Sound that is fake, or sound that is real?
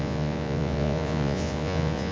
fake